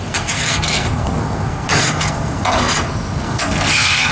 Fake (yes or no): yes